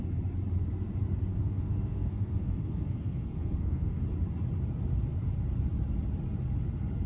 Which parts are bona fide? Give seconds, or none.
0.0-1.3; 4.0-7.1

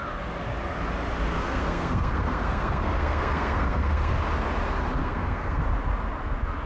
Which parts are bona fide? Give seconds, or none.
0.0-1.4; 4.1-5.0; 5.6-6.7